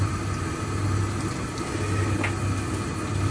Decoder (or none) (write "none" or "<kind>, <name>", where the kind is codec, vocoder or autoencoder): none